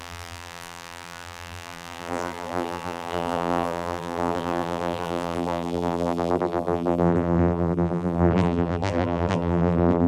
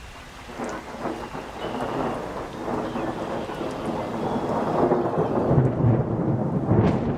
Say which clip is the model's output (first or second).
first